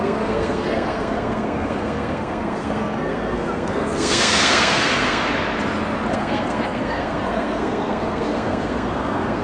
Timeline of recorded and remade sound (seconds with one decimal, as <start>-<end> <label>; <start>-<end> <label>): 0.0-5.3 remade; 5.3-6.1 recorded; 6.1-9.4 remade